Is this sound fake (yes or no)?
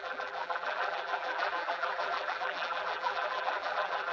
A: yes